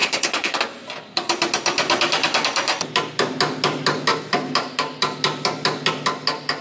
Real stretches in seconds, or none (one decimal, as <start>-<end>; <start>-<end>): 0.6-6.6